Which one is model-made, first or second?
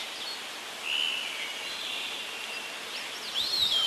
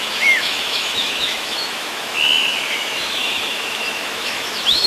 second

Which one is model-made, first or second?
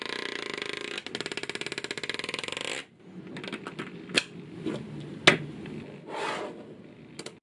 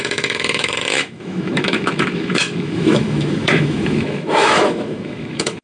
second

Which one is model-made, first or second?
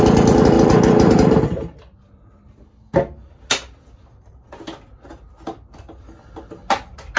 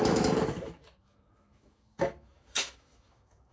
second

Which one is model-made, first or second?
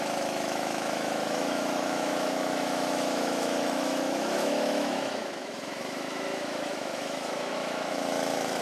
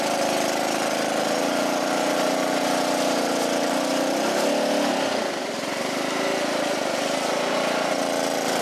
first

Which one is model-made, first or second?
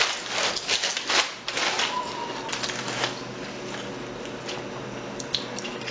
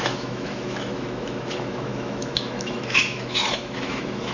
second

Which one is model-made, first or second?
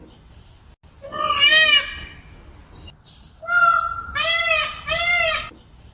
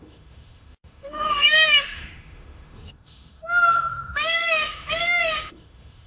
second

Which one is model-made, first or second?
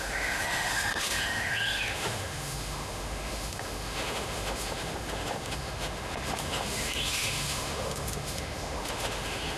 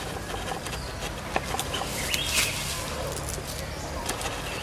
first